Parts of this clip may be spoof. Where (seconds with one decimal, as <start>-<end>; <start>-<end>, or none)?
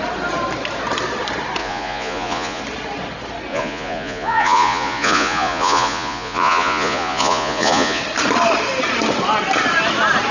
1.6-2.6; 3.5-8.0